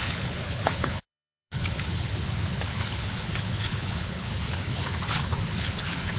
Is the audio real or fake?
fake